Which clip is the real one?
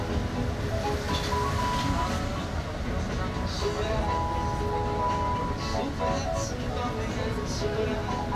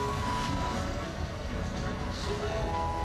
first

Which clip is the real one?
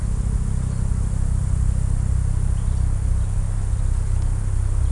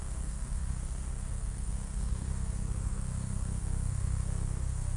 first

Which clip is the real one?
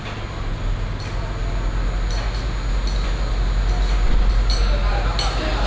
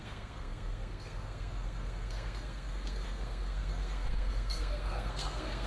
first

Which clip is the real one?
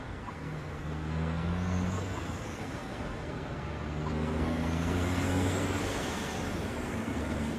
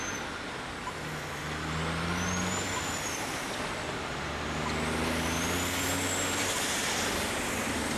second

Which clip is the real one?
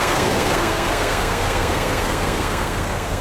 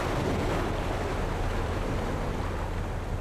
second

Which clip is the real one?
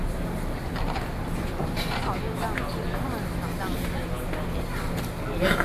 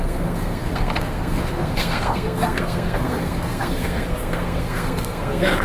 first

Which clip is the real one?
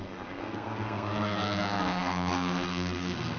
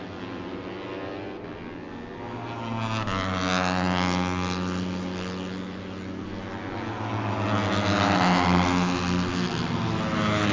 second